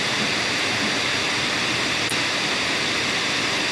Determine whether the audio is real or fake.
fake